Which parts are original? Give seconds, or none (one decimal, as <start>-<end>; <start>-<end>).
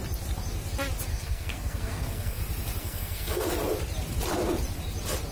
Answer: 0.0-1.1; 2.4-2.8; 3.5-5.3